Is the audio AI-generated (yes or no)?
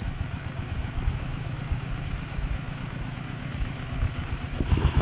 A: yes